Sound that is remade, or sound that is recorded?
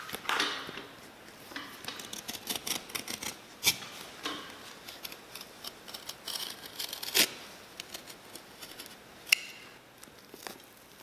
recorded